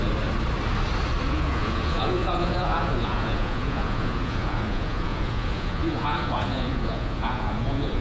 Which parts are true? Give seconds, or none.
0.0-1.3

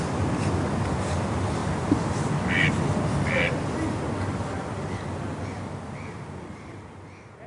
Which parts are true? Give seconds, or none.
0.0-7.5